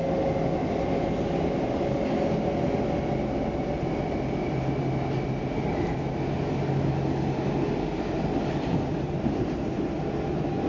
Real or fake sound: real